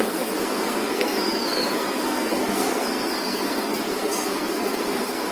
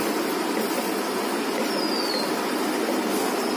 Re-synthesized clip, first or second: first